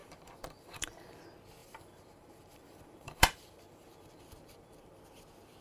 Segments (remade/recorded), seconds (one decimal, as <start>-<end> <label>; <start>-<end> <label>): 0.0-1.2 remade; 1.2-1.6 recorded; 1.6-5.0 remade; 5.0-5.6 recorded